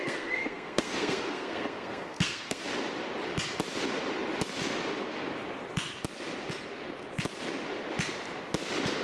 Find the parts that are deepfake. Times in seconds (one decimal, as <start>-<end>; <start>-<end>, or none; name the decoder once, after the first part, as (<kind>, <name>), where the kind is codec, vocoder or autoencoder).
0.0-2.6 (codec, SNAC)